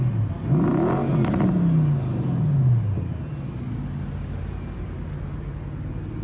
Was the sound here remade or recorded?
recorded